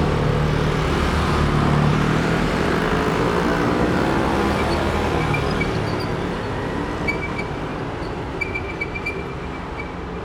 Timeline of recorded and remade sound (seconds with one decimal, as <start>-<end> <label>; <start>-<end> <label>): 0.0-1.9 recorded; 1.9-2.5 remade; 2.5-7.7 recorded; 7.7-9.2 remade; 9.2-10.2 recorded